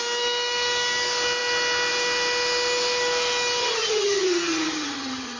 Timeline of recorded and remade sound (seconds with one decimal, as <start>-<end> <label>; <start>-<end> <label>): 0.0-3.6 recorded; 3.6-5.4 remade